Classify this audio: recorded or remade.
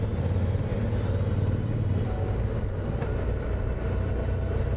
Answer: recorded